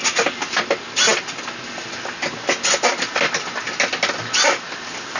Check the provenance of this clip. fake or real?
real